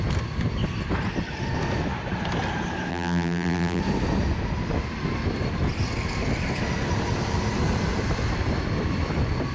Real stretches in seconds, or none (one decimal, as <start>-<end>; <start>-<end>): 0.0-2.9; 3.8-9.5